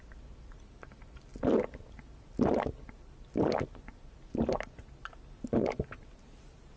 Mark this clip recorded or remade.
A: recorded